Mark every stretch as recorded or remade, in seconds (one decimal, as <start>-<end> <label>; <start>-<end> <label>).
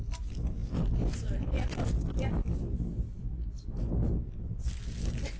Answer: 0.0-5.4 recorded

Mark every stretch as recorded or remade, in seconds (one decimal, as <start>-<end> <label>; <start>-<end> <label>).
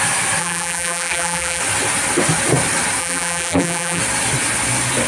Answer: 0.0-0.4 recorded; 0.4-1.6 remade; 1.6-3.0 recorded; 3.0-4.0 remade; 4.0-5.1 recorded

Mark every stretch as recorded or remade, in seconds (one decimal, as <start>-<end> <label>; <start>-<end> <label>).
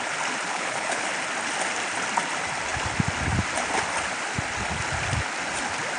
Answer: 0.0-0.5 recorded; 0.5-1.1 remade; 1.1-6.0 recorded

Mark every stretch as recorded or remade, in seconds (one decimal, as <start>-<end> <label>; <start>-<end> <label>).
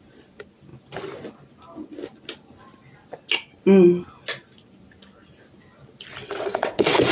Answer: 0.0-6.2 recorded; 6.2-7.1 remade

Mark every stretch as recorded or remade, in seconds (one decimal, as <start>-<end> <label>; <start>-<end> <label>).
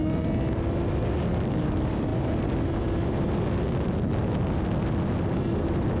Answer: 0.0-6.0 recorded